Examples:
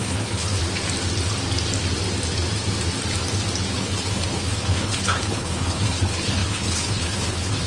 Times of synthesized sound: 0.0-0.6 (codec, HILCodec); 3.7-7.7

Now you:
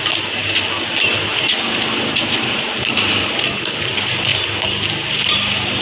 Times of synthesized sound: none

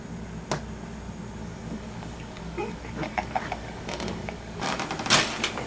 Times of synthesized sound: 1.4-4.8 (codec, DAC)